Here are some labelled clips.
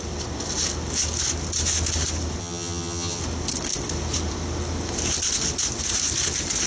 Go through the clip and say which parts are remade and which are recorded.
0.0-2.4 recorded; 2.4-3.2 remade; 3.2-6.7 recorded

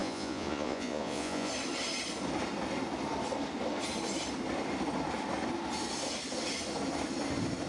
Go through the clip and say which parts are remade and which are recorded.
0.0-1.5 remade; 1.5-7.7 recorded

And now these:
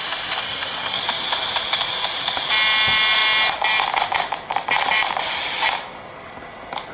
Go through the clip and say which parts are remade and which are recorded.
0.0-0.4 recorded; 0.4-1.0 remade; 1.0-6.9 recorded

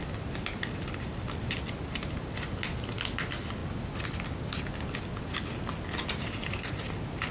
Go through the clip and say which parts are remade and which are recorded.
0.0-7.3 recorded

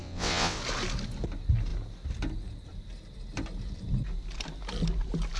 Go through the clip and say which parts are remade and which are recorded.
0.0-0.6 remade; 0.6-5.4 recorded

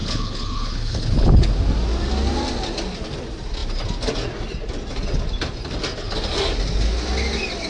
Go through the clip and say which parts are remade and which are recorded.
0.0-1.5 remade; 1.5-7.7 recorded

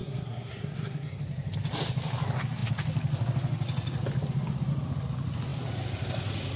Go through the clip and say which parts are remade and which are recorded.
0.0-1.2 remade; 1.2-6.6 recorded